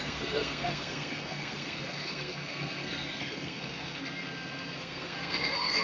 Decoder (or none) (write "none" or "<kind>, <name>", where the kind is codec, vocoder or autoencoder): codec, SNAC